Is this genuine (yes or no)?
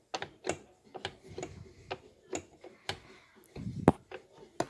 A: yes